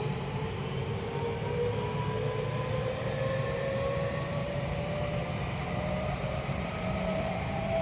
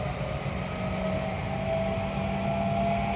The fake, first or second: first